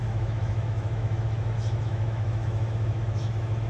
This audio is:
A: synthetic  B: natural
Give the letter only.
A